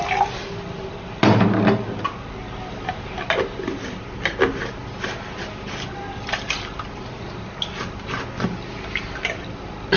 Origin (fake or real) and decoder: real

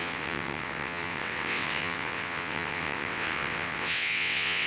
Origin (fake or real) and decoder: fake, vocoder, WaveNeXt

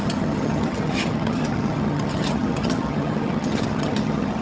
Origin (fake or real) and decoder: fake, vocoder, HiFi-GAN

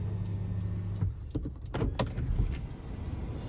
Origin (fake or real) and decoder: real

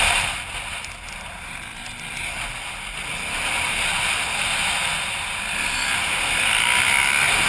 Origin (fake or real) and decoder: real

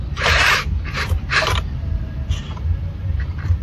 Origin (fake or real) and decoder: fake, vocoder, BigVGAN v2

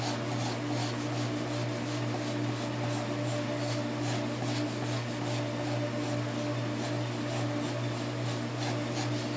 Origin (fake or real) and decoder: real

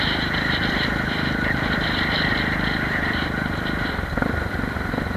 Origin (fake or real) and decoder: fake, vocoder, BigVGAN v2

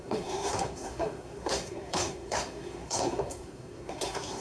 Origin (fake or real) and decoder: fake, codec, SNAC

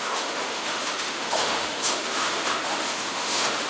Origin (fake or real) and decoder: fake, autoencoder, DAC-VAE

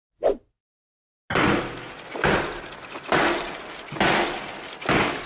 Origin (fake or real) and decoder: real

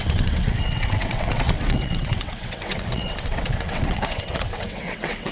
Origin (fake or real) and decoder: fake, vocoder, WaveNeXt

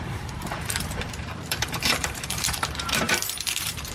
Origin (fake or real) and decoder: fake, vocoder, BigVGAN v2